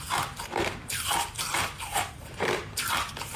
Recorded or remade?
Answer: remade